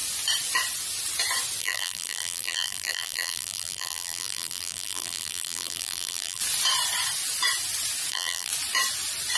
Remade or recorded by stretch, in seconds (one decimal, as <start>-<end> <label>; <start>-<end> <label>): 0.0-1.6 recorded; 1.6-6.4 remade; 6.4-8.1 recorded; 8.1-8.5 remade; 8.5-9.4 recorded